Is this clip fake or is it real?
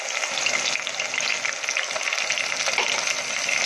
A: real